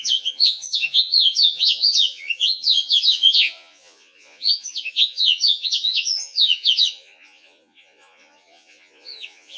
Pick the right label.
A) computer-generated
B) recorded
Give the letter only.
A